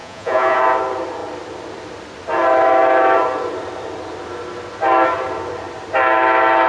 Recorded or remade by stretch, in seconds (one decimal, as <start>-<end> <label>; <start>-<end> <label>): 0.0-0.6 remade; 0.6-6.7 recorded